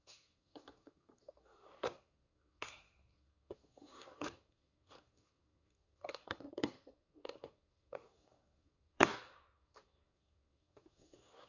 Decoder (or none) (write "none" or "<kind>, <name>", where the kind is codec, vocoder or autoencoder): codec, SNAC